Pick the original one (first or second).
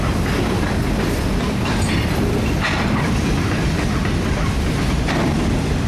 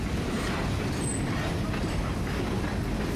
second